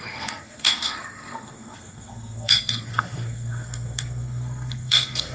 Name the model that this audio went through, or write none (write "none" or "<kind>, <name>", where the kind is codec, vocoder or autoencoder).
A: codec, SNAC